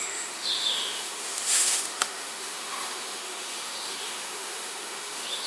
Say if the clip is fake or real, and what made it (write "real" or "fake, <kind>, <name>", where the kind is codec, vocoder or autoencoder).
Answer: fake, autoencoder, DAC-VAE